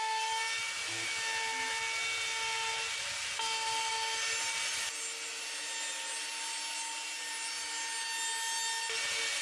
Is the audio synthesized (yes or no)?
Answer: no